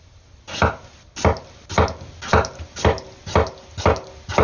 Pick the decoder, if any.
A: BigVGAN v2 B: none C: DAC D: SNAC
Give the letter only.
B